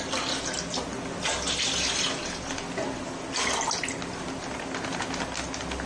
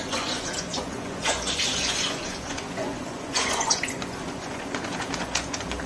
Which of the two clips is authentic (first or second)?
first